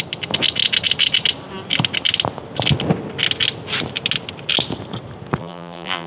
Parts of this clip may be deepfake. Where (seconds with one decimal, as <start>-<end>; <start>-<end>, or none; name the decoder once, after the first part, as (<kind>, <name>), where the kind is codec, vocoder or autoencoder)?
5.4-6.1 (vocoder, BigVGAN v2)